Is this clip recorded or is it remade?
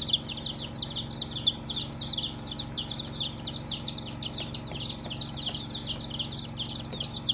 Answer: recorded